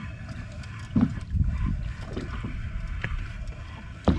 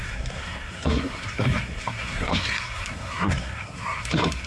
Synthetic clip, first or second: second